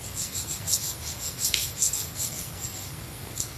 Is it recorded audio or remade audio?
remade